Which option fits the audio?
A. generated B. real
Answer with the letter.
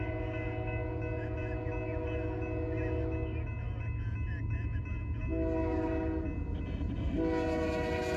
B